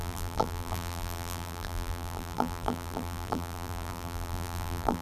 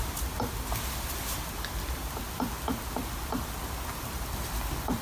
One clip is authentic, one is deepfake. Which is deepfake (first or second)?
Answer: first